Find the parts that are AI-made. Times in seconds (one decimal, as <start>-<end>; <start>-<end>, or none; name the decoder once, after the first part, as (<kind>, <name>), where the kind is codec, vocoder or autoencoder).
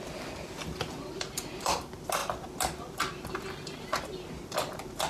none